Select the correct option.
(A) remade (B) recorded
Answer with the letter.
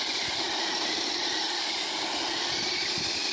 B